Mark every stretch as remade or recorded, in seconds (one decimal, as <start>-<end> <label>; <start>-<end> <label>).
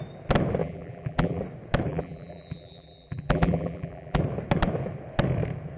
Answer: 0.0-0.6 recorded; 0.6-1.4 remade; 1.4-1.9 recorded; 1.9-4.2 remade; 4.2-5.8 recorded